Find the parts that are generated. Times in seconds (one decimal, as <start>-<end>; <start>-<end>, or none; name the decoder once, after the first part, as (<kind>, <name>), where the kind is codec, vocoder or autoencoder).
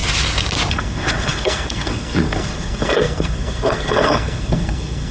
0.7-5.1 (codec, SNAC)